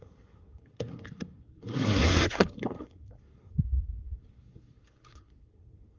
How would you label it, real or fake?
fake